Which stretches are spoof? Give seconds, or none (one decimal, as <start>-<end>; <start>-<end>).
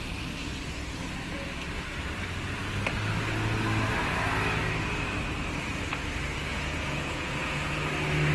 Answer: 6.5-7.9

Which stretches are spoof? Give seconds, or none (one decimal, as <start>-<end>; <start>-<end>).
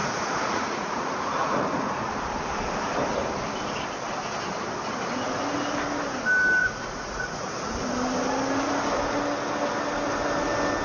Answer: 0.0-2.1; 6.6-7.5